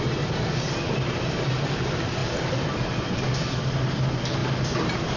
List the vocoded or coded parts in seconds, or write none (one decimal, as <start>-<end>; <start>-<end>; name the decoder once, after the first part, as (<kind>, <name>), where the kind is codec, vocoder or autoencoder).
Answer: 0.0-4.4 (vocoder, BigVGAN v2)